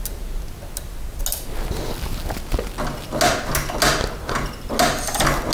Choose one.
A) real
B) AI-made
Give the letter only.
A